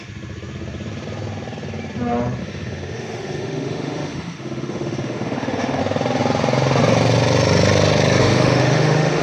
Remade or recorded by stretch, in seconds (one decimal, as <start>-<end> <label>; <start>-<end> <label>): 0.0-2.4 recorded; 2.4-5.8 remade; 5.8-8.2 recorded; 8.2-9.2 remade